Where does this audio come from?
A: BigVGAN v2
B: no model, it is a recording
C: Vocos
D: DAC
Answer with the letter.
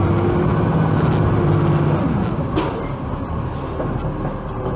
B